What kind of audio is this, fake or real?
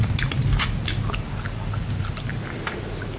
real